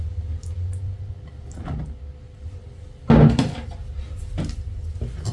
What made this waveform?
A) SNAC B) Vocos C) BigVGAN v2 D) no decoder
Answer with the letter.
D